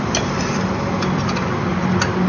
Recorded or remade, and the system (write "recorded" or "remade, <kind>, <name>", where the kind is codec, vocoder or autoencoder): remade, vocoder, BigVGAN v2